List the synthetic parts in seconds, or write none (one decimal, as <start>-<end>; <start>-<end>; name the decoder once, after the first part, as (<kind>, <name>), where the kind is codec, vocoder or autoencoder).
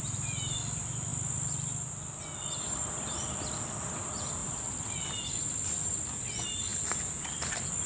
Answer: 0.0-6.7 (vocoder, BigVGAN v2)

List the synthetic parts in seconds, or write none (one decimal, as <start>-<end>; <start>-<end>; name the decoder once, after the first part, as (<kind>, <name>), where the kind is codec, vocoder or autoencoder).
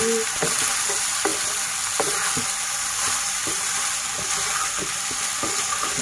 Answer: 1.3-4.8 (vocoder, BigVGAN v2)